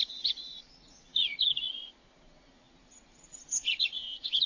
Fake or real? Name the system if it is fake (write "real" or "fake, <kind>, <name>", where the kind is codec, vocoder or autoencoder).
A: fake, vocoder, Vocos